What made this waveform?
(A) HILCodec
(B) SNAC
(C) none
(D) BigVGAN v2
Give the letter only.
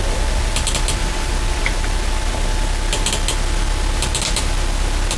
C